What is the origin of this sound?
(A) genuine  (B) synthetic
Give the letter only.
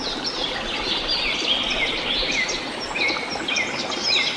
A